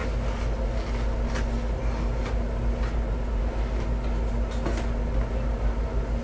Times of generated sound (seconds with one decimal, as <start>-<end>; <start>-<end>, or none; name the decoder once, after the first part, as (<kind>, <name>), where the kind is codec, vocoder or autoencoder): none